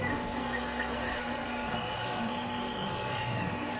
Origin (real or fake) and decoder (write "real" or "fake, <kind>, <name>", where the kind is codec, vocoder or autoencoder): fake, codec, SNAC